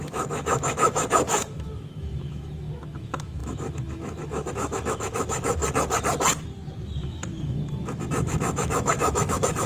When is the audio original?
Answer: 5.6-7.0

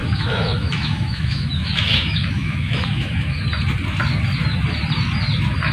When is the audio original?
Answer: 3.4-5.7

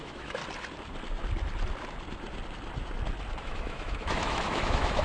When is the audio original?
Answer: 0.4-3.4

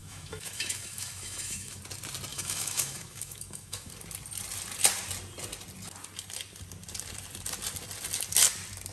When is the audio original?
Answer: 1.8-2.3; 3.9-8.9